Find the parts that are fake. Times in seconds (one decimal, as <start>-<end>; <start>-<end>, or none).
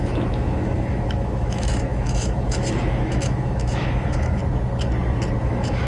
0.0-4.4; 5.4-5.9